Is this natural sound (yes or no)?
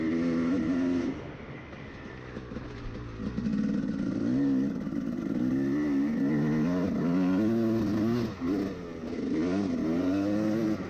yes